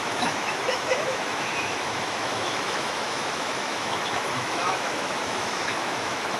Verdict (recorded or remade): remade